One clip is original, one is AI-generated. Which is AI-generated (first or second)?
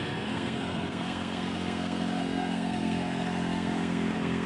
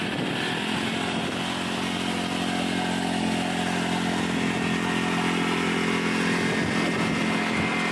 first